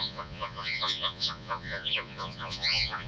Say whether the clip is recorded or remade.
remade